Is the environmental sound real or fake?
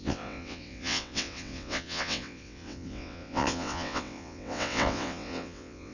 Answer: fake